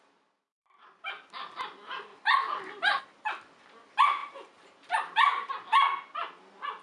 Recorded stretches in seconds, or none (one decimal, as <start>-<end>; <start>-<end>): 0.0-2.1; 3.0-4.2; 5.5-6.8